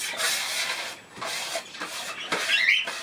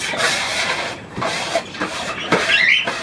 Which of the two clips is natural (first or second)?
first